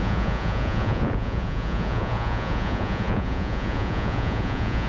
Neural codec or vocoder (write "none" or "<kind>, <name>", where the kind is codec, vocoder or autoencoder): vocoder, Vocos